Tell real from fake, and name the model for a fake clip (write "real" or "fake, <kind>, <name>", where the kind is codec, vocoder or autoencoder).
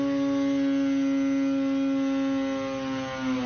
real